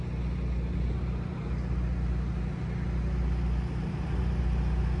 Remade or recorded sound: recorded